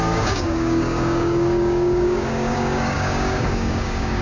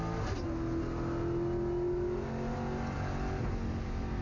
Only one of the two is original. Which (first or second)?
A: second